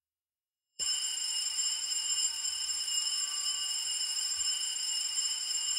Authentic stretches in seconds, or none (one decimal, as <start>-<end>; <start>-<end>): none